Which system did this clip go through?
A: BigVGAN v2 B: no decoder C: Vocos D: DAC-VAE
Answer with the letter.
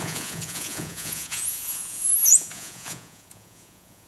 C